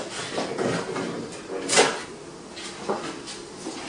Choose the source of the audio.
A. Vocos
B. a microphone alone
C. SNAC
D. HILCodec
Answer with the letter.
B